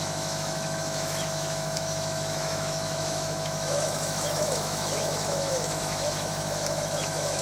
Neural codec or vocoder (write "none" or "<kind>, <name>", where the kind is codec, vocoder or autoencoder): autoencoder, DAC-VAE